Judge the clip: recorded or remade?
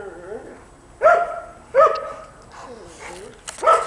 recorded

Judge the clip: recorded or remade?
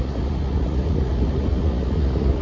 remade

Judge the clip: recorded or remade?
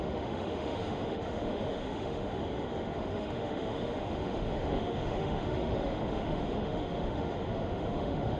remade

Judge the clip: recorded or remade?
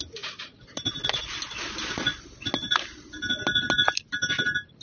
recorded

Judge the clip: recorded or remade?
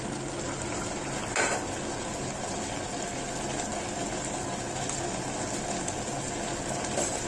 recorded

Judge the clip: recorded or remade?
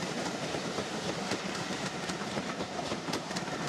remade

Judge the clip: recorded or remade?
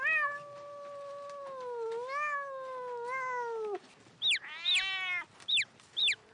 recorded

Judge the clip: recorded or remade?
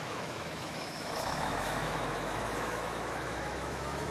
remade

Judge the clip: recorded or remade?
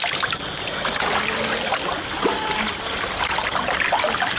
recorded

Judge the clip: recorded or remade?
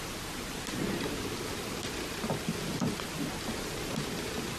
recorded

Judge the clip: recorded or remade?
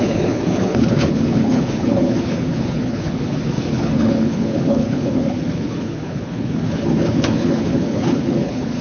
remade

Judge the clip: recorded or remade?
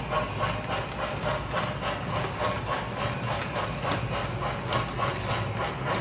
recorded